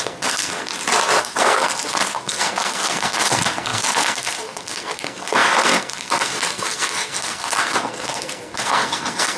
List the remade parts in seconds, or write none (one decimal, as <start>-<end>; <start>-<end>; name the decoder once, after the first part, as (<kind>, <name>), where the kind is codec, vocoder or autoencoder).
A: 0.0-0.7 (codec, SNAC); 1.2-9.4